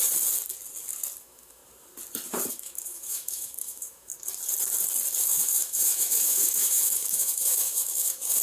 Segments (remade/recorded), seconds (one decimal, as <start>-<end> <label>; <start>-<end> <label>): 0.0-1.2 recorded; 1.2-1.6 remade; 1.6-2.5 recorded; 2.5-4.1 remade; 4.1-5.2 recorded; 5.2-8.4 remade